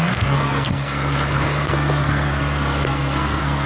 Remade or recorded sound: remade